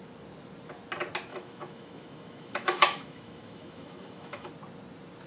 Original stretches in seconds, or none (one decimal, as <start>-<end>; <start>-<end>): 0.0-1.3; 4.5-5.3